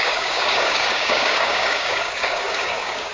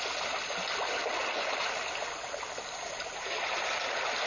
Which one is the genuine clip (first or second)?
second